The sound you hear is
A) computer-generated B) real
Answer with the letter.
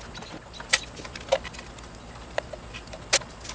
B